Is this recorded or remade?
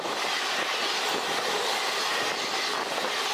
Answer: recorded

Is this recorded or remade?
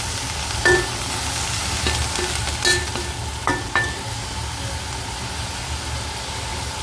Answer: recorded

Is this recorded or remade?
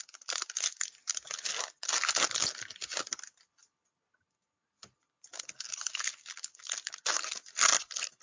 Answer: recorded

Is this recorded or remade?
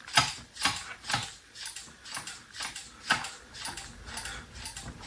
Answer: recorded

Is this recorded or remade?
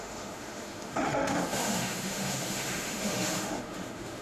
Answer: remade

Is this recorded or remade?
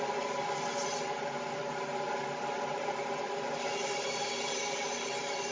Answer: recorded